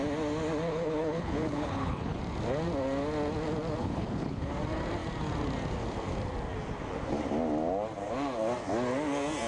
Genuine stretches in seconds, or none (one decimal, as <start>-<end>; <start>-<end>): 0.0-0.7; 2.2-3.8; 4.5-9.5